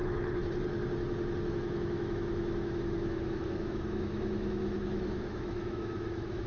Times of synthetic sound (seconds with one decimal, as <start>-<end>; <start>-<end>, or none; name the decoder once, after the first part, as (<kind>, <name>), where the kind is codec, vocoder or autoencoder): 0.0-0.4 (autoencoder, DAC-VAE); 1.5-6.5

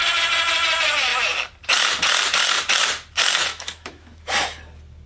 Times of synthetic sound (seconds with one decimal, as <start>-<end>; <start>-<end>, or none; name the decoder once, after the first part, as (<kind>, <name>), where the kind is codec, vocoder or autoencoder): 3.5-4.2 (autoencoder, DAC-VAE)

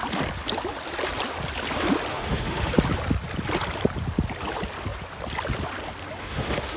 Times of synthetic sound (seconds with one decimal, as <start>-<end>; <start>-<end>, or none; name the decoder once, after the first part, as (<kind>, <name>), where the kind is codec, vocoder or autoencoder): 2.1-2.7 (autoencoder, DAC-VAE); 6.2-6.8

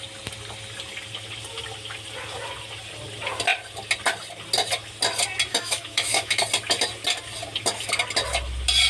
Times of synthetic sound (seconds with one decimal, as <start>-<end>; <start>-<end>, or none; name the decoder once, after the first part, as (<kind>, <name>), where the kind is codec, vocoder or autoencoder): 5.5-6.4 (autoencoder, DAC-VAE)

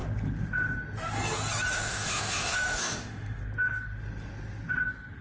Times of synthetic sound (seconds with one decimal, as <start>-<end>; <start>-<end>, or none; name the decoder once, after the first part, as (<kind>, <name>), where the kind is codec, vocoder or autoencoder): 1.7-3.4 (autoencoder, DAC-VAE)

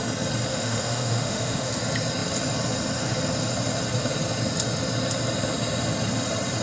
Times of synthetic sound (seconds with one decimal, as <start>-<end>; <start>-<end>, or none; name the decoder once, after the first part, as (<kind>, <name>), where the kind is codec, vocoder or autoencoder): 0.5-1.7 (autoencoder, DAC-VAE)

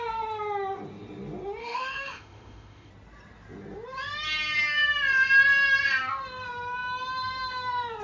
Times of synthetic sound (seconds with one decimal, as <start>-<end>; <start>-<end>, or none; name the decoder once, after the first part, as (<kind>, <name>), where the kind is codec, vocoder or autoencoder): 1.6-2.9 (autoencoder, DAC-VAE)